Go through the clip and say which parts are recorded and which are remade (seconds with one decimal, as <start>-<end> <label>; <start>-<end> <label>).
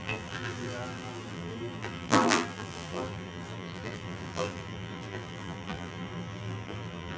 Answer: 0.0-7.2 remade